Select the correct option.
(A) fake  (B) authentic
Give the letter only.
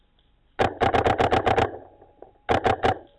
B